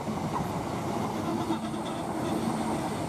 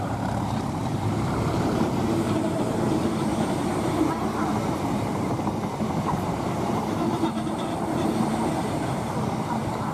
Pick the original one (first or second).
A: first